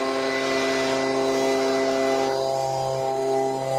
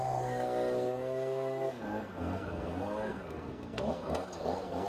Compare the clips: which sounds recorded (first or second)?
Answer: first